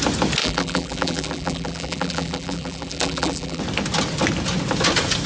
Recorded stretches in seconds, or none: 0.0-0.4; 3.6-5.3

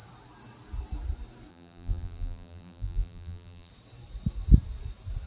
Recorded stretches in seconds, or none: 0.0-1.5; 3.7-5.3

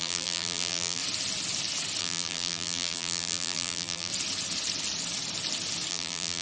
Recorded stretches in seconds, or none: 1.0-2.0; 4.1-5.9